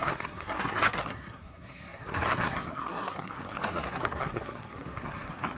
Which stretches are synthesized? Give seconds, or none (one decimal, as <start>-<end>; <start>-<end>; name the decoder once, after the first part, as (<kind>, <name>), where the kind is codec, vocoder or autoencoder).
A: 0.0-5.6 (codec, SNAC)